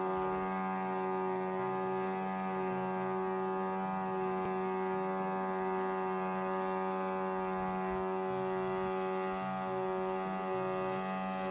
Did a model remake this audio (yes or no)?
no